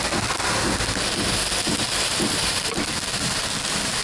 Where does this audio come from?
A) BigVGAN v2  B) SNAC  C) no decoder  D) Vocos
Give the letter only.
C